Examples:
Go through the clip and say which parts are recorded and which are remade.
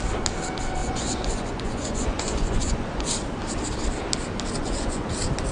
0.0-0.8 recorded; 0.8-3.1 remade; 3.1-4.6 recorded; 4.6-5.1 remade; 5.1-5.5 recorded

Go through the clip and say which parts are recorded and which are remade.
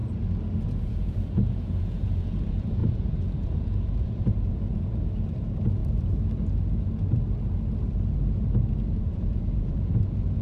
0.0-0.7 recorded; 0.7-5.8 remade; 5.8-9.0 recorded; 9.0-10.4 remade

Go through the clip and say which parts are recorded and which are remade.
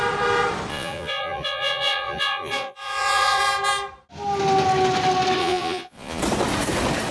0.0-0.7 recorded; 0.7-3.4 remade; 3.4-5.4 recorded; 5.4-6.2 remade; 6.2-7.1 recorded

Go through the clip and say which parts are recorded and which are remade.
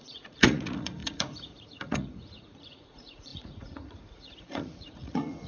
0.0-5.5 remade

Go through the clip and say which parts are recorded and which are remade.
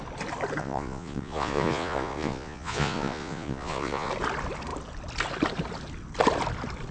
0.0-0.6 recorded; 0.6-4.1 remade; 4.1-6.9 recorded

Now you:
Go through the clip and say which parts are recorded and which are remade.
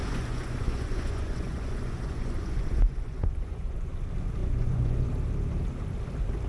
0.0-3.9 remade; 3.9-4.4 recorded; 4.4-5.1 remade; 5.1-6.5 recorded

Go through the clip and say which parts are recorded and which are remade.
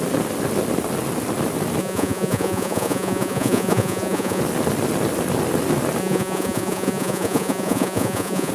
0.0-1.8 recorded; 1.8-4.4 remade; 4.4-6.0 recorded; 6.0-8.5 remade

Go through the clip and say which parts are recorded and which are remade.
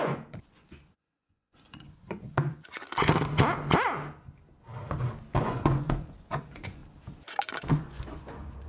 0.0-2.8 remade; 2.8-5.4 recorded; 5.4-6.8 remade; 6.8-7.8 recorded; 7.8-8.7 remade